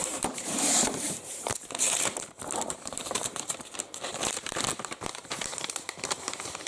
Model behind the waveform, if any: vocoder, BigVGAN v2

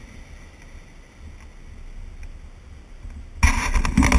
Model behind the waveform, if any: none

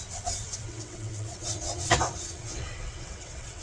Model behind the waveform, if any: vocoder, WaveNeXt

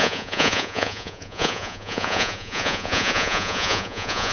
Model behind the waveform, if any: vocoder, Vocos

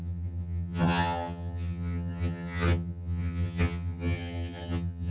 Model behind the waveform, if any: vocoder, HiFi-GAN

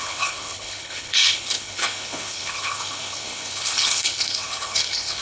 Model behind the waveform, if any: codec, HILCodec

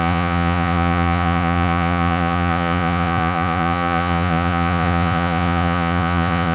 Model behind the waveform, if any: vocoder, Vocos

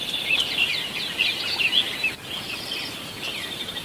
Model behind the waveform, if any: none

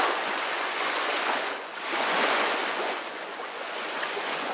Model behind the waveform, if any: vocoder, Vocos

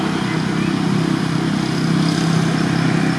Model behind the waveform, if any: none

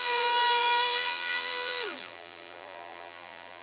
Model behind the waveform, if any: vocoder, BigVGAN v2